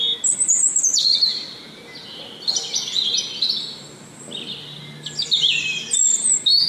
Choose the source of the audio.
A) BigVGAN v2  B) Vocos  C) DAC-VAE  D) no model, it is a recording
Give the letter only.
D